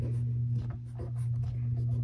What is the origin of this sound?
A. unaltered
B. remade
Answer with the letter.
A